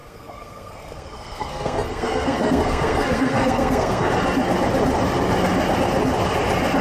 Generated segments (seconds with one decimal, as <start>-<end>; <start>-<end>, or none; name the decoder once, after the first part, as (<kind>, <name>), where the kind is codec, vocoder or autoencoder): 0.0-4.1 (codec, SNAC)